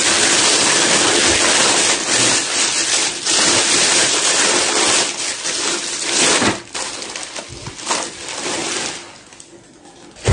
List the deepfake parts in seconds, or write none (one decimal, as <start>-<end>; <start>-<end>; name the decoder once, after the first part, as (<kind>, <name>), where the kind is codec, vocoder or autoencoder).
3.0-4.4 (vocoder, BigVGAN v2)